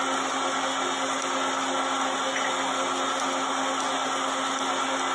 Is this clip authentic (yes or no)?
yes